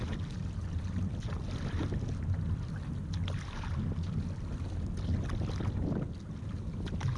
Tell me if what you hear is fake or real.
real